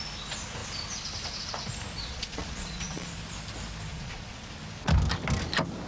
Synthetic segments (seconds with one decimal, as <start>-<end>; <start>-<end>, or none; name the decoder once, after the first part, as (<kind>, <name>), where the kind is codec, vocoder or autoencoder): 2.0-3.1 (vocoder, Vocos); 3.9-4.5